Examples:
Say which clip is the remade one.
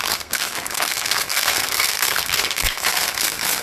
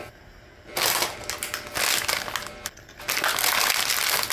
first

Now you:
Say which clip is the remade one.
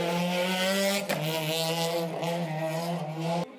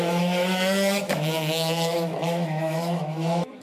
second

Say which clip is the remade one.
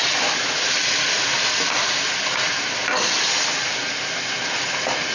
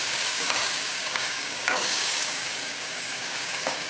second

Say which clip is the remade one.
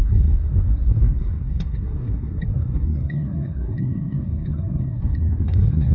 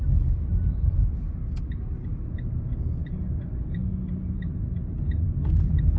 first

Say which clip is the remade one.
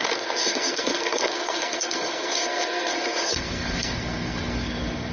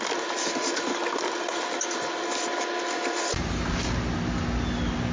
first